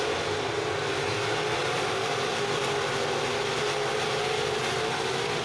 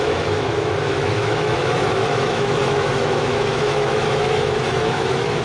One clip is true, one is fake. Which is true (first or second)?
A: first